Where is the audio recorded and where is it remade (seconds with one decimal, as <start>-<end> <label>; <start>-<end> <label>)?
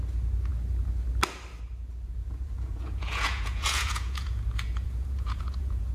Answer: 0.0-2.2 recorded; 2.2-5.9 remade